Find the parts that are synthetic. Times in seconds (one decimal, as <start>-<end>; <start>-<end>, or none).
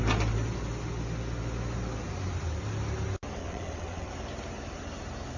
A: 3.4-4.1